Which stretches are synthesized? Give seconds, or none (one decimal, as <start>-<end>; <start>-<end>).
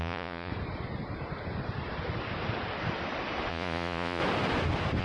0.0-0.5; 3.5-4.2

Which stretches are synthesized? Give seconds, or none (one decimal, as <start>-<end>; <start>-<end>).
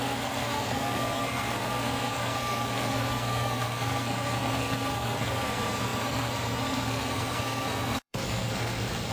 0.0-9.1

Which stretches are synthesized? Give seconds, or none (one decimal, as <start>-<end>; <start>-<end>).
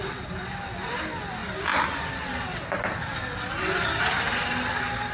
none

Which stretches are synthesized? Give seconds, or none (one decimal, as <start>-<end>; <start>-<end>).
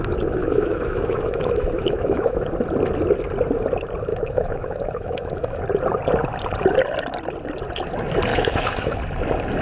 0.4-2.5; 4.1-5.6; 8.3-9.0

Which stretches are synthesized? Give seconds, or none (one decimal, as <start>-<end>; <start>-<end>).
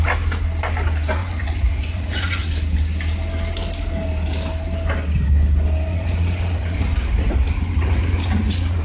1.2-2.5; 5.9-8.8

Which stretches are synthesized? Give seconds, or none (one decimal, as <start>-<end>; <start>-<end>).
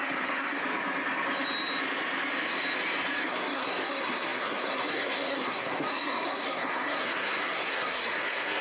0.0-0.6; 3.2-8.6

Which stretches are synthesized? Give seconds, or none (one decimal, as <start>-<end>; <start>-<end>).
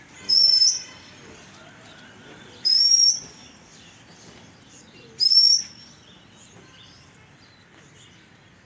0.6-5.6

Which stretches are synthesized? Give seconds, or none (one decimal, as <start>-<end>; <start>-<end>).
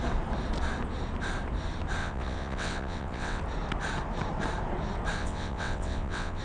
2.0-3.4; 5.2-6.4